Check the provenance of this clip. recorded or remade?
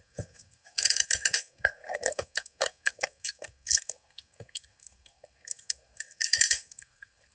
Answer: remade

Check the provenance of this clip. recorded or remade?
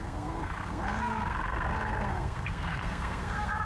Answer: remade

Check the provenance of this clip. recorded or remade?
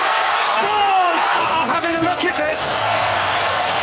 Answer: remade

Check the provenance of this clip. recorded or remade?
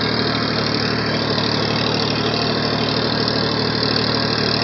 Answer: recorded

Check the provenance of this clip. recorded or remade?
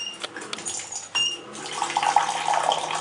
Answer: recorded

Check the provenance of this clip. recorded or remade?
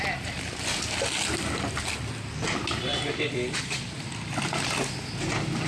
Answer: recorded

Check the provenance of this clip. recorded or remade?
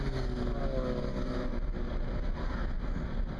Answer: recorded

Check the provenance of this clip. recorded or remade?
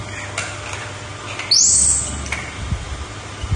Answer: recorded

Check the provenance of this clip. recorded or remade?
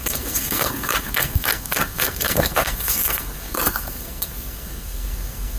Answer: remade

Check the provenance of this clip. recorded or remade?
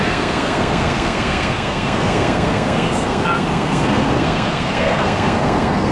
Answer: remade